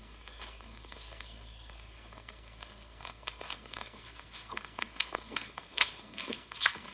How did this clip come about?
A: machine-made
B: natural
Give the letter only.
A